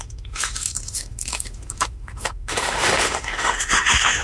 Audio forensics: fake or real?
fake